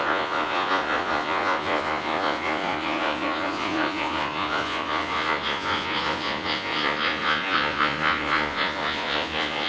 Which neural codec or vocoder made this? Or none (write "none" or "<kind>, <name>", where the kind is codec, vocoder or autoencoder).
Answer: vocoder, Vocos